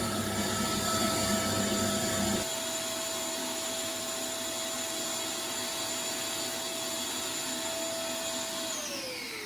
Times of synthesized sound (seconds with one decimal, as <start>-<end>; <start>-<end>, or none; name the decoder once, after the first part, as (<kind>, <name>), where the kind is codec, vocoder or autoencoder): 3.4-4.0 (autoencoder, DAC-VAE)